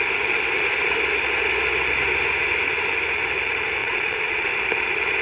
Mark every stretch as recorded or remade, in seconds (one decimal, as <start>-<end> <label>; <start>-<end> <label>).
0.0-3.8 recorded; 3.8-4.5 remade; 4.5-5.2 recorded